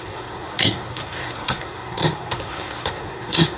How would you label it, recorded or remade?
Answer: remade